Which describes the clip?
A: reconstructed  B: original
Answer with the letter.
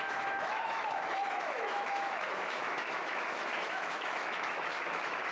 A